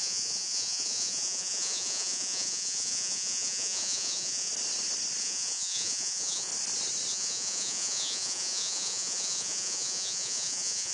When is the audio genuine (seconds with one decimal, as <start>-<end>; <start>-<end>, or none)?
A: 4.5-5.2; 6.5-7.1